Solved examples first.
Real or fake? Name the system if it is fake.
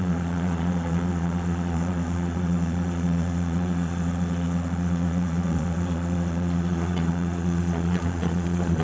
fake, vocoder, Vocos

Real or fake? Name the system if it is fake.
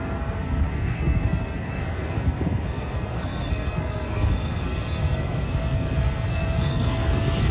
fake, codec, SNAC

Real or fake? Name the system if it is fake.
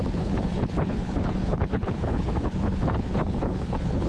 fake, codec, HILCodec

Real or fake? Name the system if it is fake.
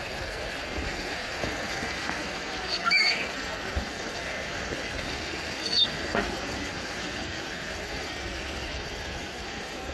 fake, codec, SNAC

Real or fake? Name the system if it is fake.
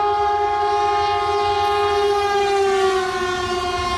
real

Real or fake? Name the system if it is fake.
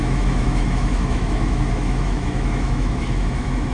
fake, autoencoder, DAC-VAE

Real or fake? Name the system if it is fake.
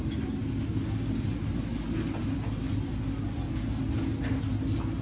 real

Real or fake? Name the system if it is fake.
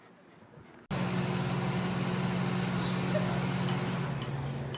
real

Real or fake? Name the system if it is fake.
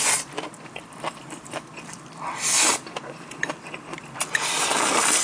fake, vocoder, BigVGAN v2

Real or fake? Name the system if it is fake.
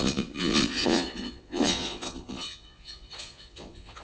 fake, vocoder, Vocos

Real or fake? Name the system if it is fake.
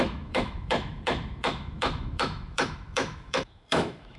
fake, autoencoder, DAC-VAE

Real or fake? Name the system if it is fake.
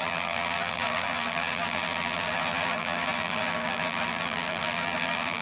fake, vocoder, BigVGAN v2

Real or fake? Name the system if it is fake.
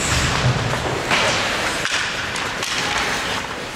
fake, vocoder, BigVGAN v2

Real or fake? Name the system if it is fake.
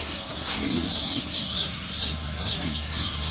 fake, codec, SNAC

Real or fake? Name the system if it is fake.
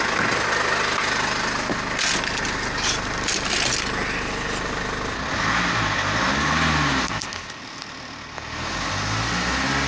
real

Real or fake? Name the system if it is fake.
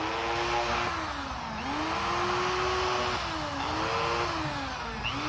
real